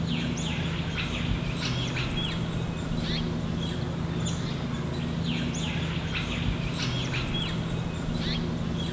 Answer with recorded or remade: recorded